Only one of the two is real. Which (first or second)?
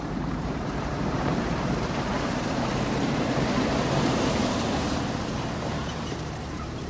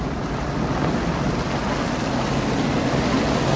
second